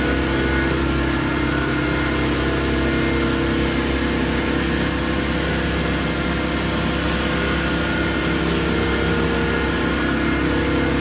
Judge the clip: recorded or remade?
recorded